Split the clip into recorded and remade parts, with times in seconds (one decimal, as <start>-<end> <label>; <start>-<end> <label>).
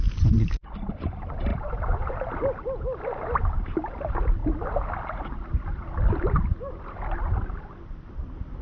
0.0-1.5 recorded; 1.5-2.3 remade; 2.3-8.6 recorded